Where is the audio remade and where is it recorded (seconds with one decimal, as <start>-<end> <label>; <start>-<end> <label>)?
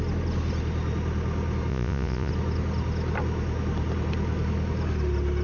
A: 0.0-1.7 recorded; 1.7-2.3 remade; 2.3-5.4 recorded